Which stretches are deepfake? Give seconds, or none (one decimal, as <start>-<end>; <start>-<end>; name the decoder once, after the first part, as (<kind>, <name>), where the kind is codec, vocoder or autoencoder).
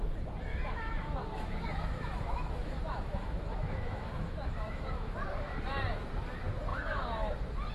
0.5-5.1 (autoencoder, DAC-VAE); 6.7-7.3